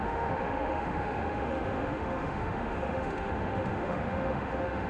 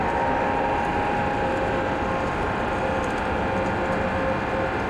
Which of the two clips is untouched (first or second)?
second